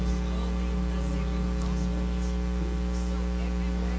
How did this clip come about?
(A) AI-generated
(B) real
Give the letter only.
B